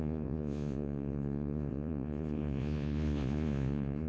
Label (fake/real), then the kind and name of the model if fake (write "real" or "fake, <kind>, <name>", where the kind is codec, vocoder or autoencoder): fake, vocoder, Vocos